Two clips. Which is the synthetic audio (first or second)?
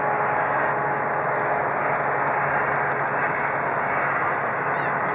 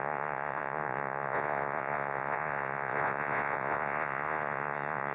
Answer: second